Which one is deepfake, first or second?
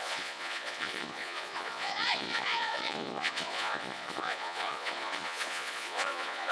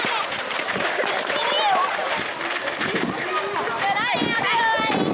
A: first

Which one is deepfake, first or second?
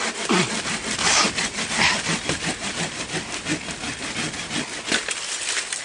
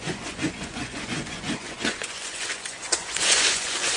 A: second